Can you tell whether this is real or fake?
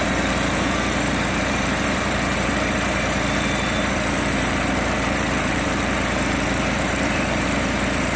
fake